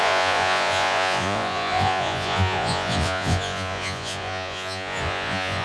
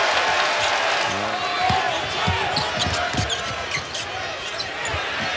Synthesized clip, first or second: first